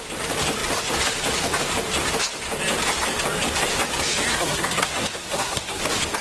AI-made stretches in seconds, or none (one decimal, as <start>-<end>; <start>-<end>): 4.3-5.8